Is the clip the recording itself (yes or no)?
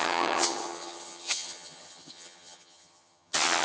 no